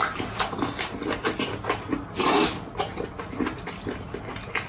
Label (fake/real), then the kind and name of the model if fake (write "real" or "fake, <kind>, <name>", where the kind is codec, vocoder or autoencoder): real